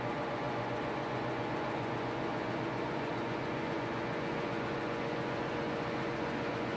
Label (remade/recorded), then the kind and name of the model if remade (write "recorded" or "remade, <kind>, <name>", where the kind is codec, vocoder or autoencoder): remade, vocoder, Vocos